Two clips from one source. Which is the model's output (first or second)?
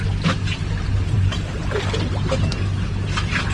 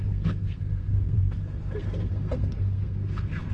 second